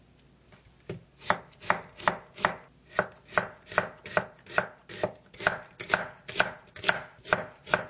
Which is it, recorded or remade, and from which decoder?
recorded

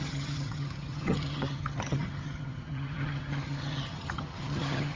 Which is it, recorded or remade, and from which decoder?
remade, vocoder, HiFi-GAN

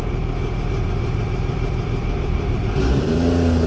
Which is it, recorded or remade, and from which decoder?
remade, vocoder, BigVGAN v2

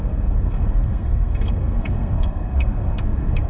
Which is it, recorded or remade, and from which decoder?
remade, codec, SNAC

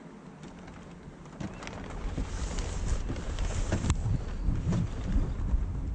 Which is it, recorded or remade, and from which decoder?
recorded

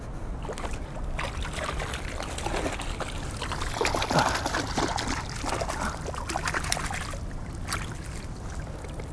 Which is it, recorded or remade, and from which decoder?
recorded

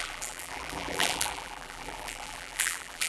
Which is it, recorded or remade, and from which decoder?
remade, vocoder, BigVGAN v2